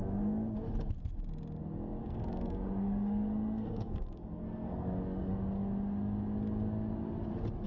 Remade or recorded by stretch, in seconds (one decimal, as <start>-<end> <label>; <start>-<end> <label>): 0.0-2.0 recorded; 2.0-5.3 remade; 5.3-7.7 recorded